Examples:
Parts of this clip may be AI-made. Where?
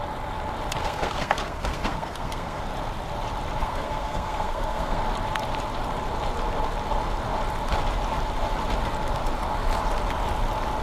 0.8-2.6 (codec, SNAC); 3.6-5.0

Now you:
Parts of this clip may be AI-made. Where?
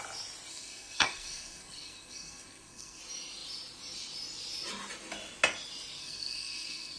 0.5-3.0 (codec, SNAC); 6.0-7.0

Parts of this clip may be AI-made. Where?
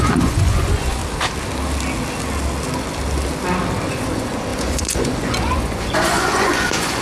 0.0-1.0 (vocoder, Vocos); 3.9-7.0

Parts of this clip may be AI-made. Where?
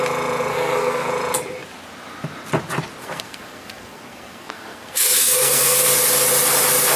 0.5-1.1 (codec, SNAC); 3.0-5.9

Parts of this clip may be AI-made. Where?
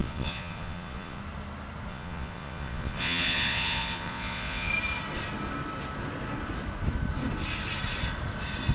0.0-1.2 (vocoder, Vocos); 1.9-4.7